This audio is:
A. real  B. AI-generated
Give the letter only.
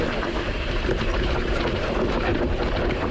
B